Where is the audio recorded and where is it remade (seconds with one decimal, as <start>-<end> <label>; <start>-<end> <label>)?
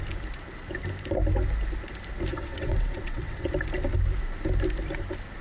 0.0-2.3 recorded; 2.3-3.5 remade; 3.5-5.4 recorded